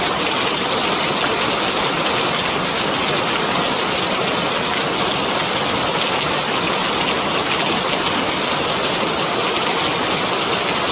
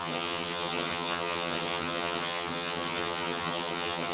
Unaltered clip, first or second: first